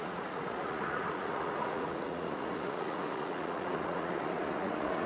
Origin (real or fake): fake